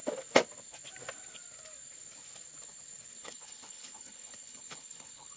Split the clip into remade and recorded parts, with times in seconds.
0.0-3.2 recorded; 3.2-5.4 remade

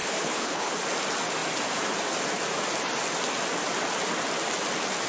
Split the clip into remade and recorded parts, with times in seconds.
0.0-0.7 remade; 0.7-5.1 recorded

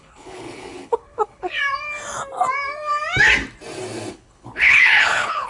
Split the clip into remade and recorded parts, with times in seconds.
0.0-1.6 remade; 1.6-4.1 recorded; 4.1-5.5 remade

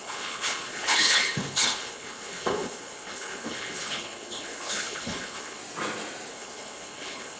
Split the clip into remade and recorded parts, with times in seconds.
0.0-5.6 remade; 5.6-6.3 recorded; 6.3-7.4 remade

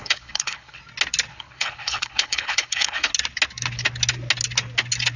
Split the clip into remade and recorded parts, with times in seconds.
0.0-0.8 remade; 0.8-1.3 recorded; 1.3-3.1 remade; 3.1-5.2 recorded

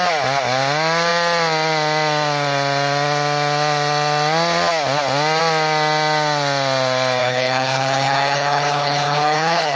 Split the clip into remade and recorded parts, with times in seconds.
0.0-7.2 recorded; 7.2-9.8 remade